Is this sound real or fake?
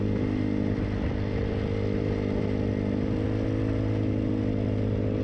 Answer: real